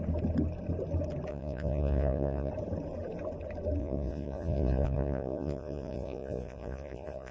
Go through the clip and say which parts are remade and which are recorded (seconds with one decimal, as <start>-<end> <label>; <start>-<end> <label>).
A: 0.0-1.3 recorded; 1.3-2.5 remade; 2.5-3.8 recorded; 3.8-7.3 remade